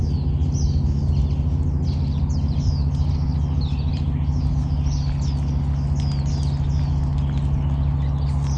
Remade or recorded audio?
recorded